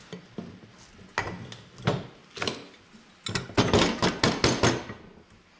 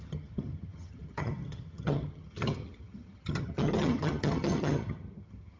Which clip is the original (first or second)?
first